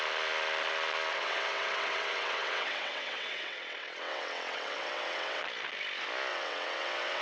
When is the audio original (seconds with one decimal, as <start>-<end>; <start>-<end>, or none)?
0.0-1.1; 5.4-6.3